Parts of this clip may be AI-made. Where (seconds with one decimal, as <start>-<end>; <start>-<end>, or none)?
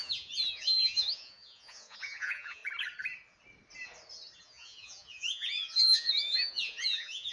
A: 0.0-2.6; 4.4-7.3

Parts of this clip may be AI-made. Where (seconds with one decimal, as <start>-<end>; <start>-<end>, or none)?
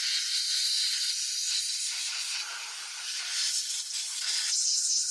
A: none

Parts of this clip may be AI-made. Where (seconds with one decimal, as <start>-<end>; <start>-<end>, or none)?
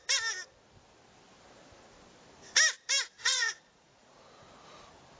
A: 3.2-4.2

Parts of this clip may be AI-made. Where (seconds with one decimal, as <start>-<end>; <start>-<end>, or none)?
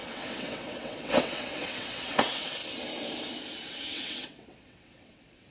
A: 0.0-2.6; 3.7-5.5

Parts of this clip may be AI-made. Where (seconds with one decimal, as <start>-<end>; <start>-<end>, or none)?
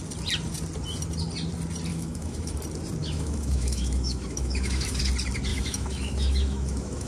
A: 1.9-2.6; 3.0-5.0; 5.5-7.1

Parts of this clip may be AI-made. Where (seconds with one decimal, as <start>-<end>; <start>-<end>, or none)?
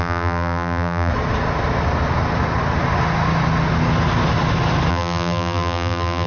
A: 0.0-1.1; 4.9-6.3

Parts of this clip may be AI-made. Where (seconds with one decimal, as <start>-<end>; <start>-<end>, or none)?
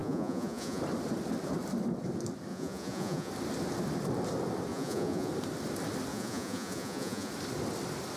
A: 0.0-0.8; 2.5-3.3; 4.7-5.3; 6.1-7.3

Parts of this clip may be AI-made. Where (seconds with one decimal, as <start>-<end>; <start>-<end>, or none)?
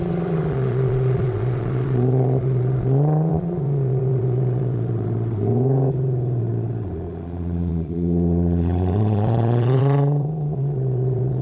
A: 0.0-5.5; 6.4-11.4